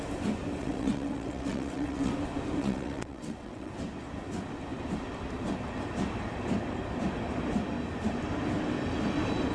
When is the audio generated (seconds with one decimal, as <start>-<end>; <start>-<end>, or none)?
0.6-2.1; 2.6-3.7